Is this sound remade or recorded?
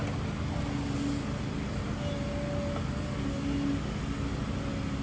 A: recorded